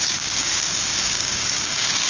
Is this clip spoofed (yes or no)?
yes